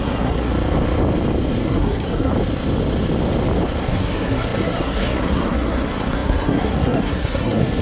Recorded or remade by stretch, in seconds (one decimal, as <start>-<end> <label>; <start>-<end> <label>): 0.0-0.5 remade; 0.5-1.6 recorded; 1.6-2.3 remade; 2.3-3.8 recorded; 3.8-7.8 remade